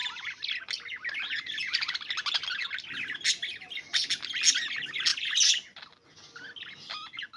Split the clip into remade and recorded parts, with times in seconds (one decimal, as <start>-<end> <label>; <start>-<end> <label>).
0.0-7.4 recorded